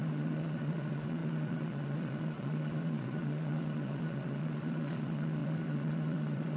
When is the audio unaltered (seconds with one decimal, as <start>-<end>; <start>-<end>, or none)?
none